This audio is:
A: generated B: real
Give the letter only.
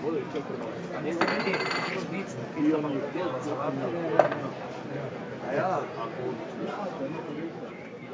B